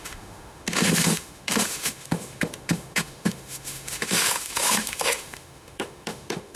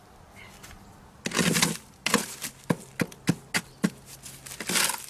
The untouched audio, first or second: second